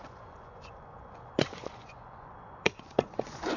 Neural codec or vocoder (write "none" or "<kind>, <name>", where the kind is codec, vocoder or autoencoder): vocoder, Vocos